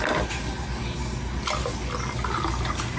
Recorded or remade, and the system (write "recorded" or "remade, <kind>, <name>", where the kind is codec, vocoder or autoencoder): recorded